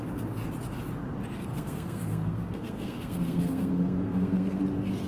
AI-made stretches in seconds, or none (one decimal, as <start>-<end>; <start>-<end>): 1.5-4.6